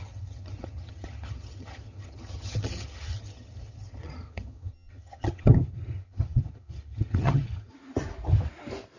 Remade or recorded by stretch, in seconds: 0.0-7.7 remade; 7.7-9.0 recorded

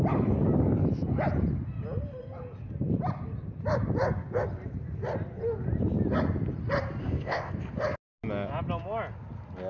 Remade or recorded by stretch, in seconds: 0.0-7.0 recorded; 7.0-7.5 remade; 7.5-9.7 recorded

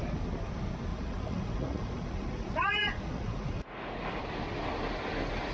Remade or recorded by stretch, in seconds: 0.0-0.9 recorded; 0.9-4.2 remade; 4.2-5.5 recorded

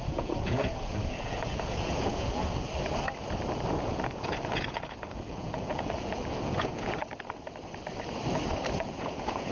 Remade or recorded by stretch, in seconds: 0.0-2.5 remade; 2.5-3.8 recorded; 3.8-7.0 remade; 7.0-8.7 recorded; 8.7-9.5 remade

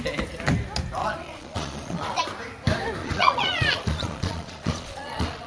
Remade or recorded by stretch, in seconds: 0.0-1.0 recorded; 1.0-2.2 remade; 2.2-3.0 recorded; 3.0-5.5 remade

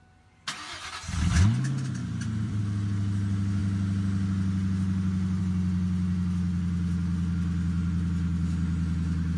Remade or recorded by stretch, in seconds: 0.0-2.0 recorded; 2.0-2.6 remade; 2.6-9.4 recorded